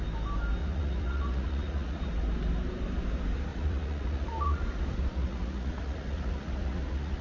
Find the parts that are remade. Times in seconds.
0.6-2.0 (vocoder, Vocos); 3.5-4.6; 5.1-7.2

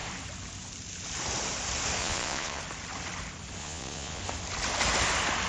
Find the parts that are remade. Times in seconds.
2.0-2.6 (vocoder, Vocos); 3.6-4.2

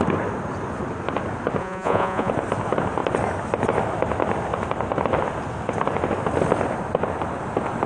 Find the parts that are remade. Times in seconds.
1.6-2.3 (vocoder, Vocos)

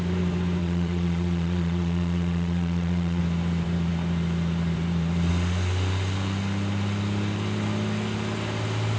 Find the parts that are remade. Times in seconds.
0.6-3.2 (vocoder, Vocos)

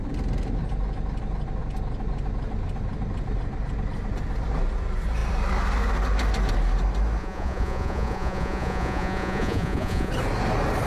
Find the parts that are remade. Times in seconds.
7.2-10.1 (vocoder, Vocos)

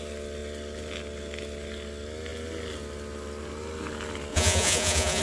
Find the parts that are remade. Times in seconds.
4.3-5.2 (vocoder, Vocos)

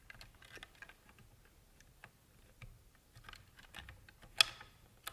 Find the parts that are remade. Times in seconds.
none